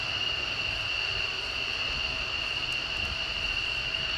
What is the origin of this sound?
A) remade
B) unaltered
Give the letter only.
B